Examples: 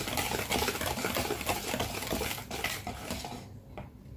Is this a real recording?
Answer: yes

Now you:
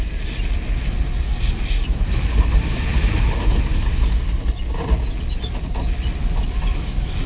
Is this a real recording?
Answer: yes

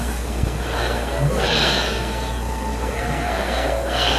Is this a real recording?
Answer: no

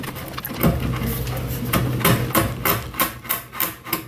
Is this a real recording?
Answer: no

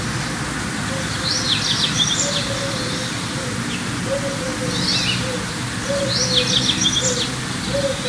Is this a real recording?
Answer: yes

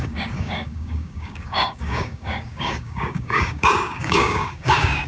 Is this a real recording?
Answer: no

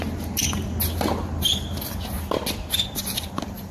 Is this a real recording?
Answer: yes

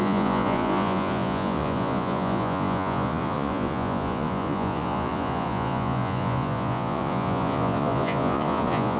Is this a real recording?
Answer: no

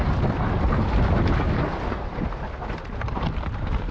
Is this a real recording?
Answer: yes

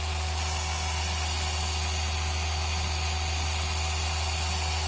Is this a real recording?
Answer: yes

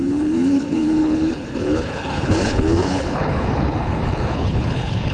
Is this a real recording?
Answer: no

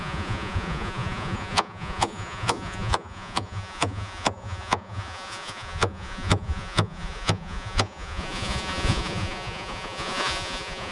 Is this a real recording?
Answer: no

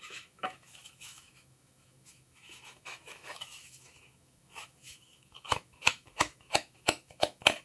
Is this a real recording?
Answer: no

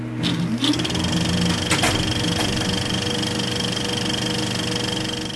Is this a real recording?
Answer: yes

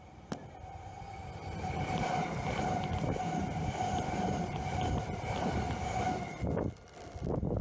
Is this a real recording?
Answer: yes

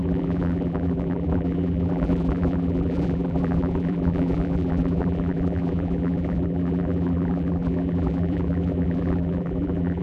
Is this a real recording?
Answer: no